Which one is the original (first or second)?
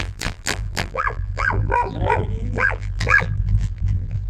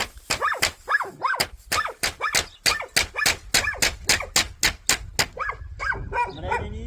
second